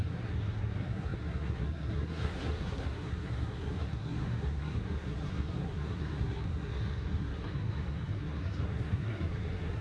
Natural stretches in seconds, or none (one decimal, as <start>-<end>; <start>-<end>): none